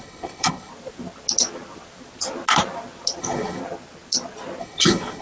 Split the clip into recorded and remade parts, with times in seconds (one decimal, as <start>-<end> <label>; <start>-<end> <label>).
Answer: 0.0-0.7 remade; 0.7-3.2 recorded; 3.2-3.6 remade; 3.6-4.6 recorded; 4.6-5.2 remade